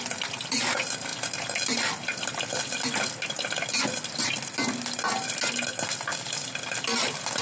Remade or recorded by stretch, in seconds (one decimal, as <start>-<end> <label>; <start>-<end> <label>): 0.0-7.4 recorded